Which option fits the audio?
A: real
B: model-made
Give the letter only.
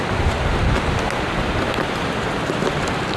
A